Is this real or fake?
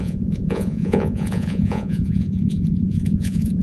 fake